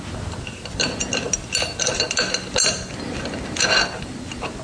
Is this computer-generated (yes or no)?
no